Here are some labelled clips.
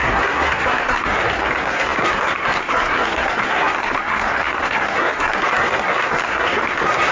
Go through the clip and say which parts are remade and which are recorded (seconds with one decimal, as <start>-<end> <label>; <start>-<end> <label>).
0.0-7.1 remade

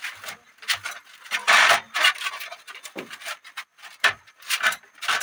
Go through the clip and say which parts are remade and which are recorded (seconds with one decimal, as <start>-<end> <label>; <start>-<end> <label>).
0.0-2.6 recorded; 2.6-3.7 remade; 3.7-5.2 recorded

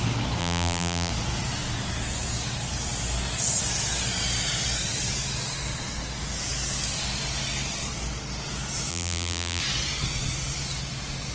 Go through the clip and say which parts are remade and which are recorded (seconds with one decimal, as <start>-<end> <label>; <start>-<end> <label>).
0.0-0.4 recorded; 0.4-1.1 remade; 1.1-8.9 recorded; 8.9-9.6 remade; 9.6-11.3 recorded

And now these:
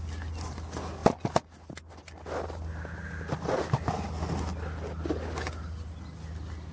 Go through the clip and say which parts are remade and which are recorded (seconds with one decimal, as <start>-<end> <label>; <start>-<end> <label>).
0.0-6.7 recorded

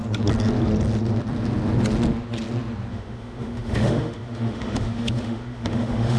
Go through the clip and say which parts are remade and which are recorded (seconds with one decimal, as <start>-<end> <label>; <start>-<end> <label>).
0.0-2.9 recorded; 2.9-6.2 remade

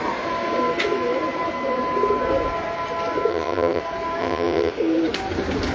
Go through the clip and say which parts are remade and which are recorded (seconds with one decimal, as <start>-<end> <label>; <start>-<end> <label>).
0.0-3.3 recorded; 3.3-3.8 remade; 3.8-4.2 recorded; 4.2-4.7 remade; 4.7-5.7 recorded